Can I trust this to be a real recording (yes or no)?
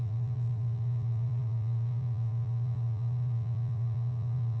no